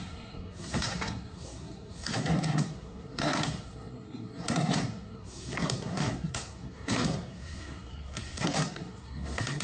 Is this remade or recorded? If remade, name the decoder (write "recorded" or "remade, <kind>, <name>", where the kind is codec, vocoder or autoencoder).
remade, codec, SNAC